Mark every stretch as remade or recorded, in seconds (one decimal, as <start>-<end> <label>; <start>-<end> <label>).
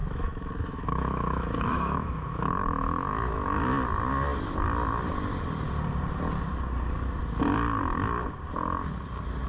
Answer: 0.0-3.7 remade; 3.7-9.5 recorded